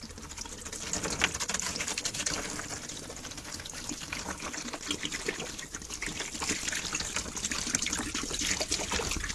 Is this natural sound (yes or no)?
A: yes